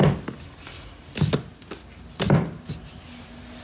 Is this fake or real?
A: real